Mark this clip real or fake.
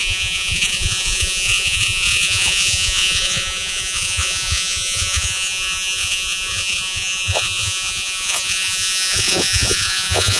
fake